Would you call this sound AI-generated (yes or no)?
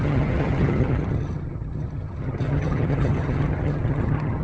yes